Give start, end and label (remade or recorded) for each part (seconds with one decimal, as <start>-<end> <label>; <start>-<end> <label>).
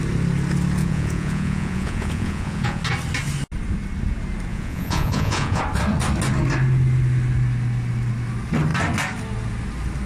0.0-0.8 recorded; 0.8-2.8 remade; 2.8-4.5 recorded; 4.5-5.6 remade; 5.6-10.1 recorded